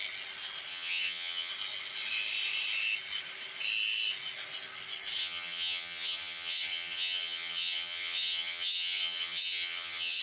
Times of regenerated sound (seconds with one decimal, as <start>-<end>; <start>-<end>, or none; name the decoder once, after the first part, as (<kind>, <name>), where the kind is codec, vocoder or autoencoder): 0.7-1.5 (vocoder, HiFi-GAN); 5.2-10.2